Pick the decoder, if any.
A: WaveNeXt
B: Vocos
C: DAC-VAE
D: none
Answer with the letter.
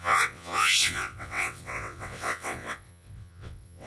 A